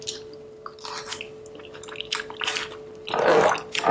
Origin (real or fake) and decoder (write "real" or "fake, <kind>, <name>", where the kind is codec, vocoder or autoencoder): real